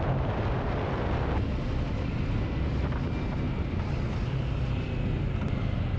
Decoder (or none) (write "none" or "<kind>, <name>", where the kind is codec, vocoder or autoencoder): none